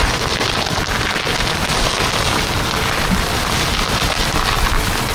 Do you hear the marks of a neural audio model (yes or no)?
no